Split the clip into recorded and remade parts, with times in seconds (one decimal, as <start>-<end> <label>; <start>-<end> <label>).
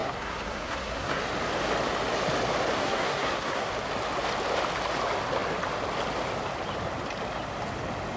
0.0-1.2 remade; 1.2-2.8 recorded; 2.8-3.7 remade; 3.7-8.2 recorded